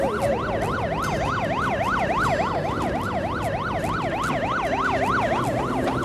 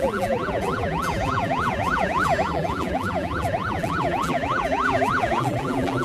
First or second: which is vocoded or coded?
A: second